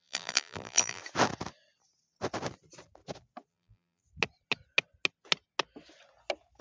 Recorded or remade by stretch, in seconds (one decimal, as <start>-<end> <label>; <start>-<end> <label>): 0.0-1.0 remade; 1.0-3.5 recorded; 3.5-4.0 remade; 4.0-6.6 recorded